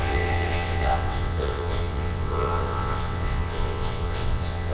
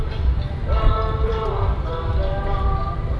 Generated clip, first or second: first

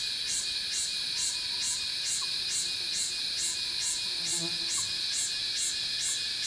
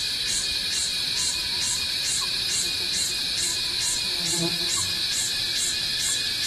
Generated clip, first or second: second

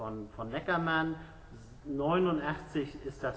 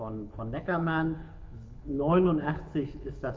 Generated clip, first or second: second